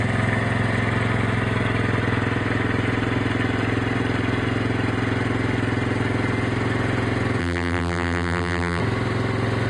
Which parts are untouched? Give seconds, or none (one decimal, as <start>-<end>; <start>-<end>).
0.0-7.4; 8.8-9.7